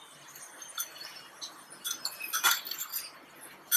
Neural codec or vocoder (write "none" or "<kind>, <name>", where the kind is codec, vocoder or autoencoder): none